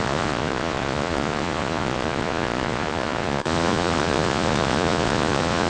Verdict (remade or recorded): remade